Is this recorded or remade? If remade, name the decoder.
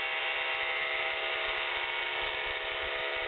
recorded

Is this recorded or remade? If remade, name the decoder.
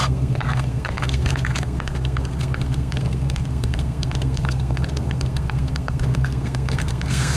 remade, codec, SNAC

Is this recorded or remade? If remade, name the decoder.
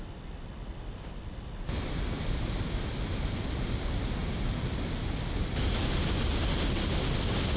recorded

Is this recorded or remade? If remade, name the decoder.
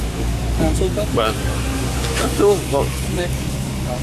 remade, codec, DAC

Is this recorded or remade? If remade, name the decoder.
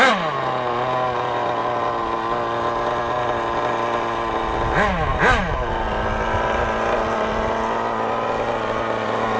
recorded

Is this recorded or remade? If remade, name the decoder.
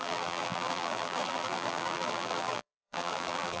remade, vocoder, BigVGAN v2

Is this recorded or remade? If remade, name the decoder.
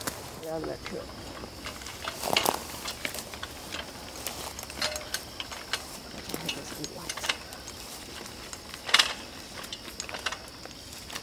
recorded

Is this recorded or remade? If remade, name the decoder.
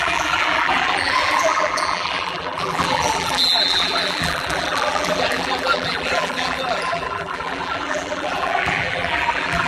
remade, vocoder, BigVGAN v2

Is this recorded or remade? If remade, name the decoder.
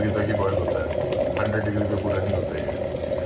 recorded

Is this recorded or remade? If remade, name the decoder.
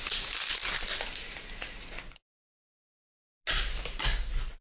recorded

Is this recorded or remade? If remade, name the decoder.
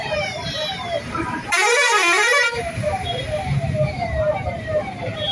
remade, vocoder, BigVGAN v2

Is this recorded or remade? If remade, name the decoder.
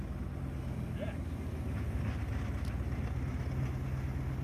recorded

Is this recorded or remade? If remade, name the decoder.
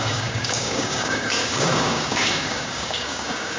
remade, codec, DAC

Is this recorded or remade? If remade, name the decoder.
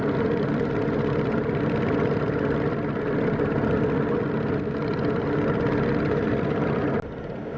recorded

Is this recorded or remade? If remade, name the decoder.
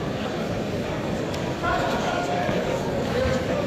remade, codec, DAC